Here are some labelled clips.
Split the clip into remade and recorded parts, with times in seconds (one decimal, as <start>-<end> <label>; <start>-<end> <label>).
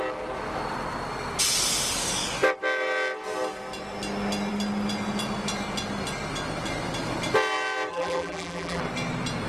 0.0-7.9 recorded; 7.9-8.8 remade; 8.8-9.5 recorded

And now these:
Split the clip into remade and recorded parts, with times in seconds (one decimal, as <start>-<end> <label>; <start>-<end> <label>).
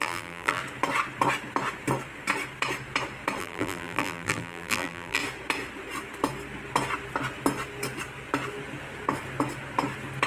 0.0-0.6 remade; 0.6-3.4 recorded; 3.4-5.2 remade; 5.2-10.3 recorded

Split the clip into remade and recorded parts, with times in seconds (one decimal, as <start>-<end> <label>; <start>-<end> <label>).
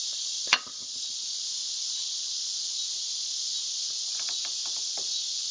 0.0-0.8 remade; 0.8-4.1 recorded; 4.1-5.5 remade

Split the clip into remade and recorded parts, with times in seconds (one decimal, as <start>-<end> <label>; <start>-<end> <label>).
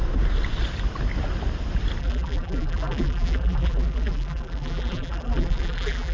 0.0-2.0 recorded; 2.0-6.1 remade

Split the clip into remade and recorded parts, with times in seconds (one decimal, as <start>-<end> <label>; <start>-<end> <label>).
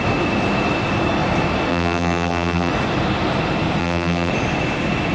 0.0-1.7 recorded; 1.7-2.7 remade; 2.7-3.8 recorded; 3.8-4.3 remade; 4.3-5.1 recorded